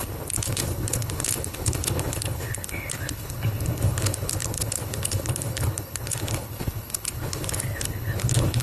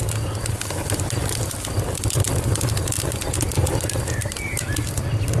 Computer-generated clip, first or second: first